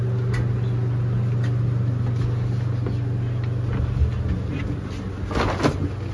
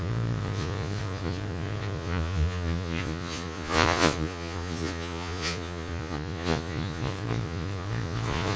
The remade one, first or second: second